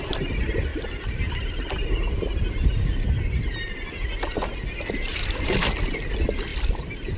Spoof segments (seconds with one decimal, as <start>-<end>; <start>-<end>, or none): 2.7-3.3; 6.5-7.2